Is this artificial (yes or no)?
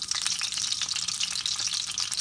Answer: no